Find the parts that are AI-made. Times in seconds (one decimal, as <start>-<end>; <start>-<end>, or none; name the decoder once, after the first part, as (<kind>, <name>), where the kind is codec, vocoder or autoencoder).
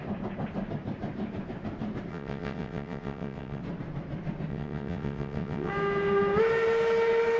2.1-3.6 (vocoder, WaveNeXt); 4.5-5.7